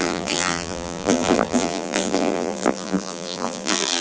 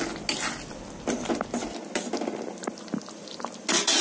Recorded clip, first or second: second